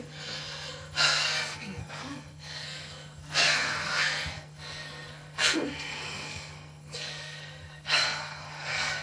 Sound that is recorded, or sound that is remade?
remade